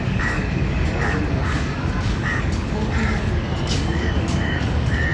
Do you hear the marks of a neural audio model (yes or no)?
yes